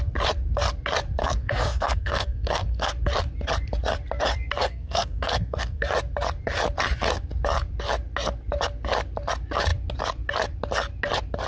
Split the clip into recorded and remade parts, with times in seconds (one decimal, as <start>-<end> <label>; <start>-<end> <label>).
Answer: 0.0-1.2 recorded; 1.2-2.9 remade; 2.9-4.6 recorded; 4.6-5.9 remade; 5.9-11.5 recorded